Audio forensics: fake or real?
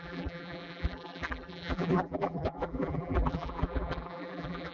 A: fake